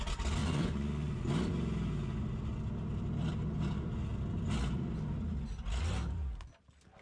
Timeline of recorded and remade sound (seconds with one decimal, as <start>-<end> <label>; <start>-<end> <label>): 0.0-0.4 recorded; 0.4-1.2 remade; 1.2-7.0 recorded